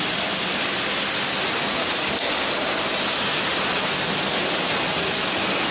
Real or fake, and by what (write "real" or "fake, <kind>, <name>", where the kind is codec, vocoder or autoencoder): real